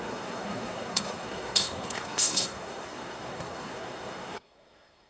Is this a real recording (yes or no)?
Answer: no